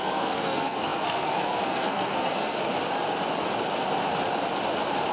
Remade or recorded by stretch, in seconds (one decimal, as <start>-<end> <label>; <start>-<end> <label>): 0.0-2.7 remade; 2.7-5.1 recorded